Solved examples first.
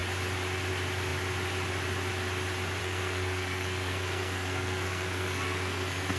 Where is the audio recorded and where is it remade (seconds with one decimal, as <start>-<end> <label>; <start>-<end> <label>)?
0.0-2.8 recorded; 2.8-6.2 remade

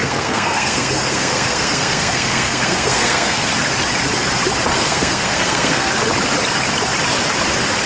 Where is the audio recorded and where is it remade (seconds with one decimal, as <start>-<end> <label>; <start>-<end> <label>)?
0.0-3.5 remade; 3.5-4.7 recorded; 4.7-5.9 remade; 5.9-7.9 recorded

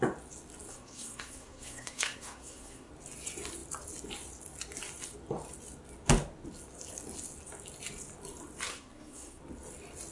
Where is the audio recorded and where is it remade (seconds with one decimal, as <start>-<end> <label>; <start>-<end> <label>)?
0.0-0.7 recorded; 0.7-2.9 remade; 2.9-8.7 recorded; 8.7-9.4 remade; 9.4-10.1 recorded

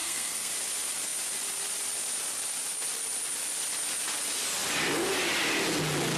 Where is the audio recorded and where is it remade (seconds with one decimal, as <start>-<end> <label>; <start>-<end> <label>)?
0.0-0.5 remade; 0.5-6.2 recorded

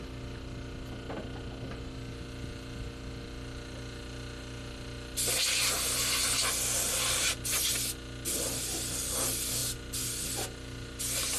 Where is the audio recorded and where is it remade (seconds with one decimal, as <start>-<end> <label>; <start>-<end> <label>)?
0.0-11.4 recorded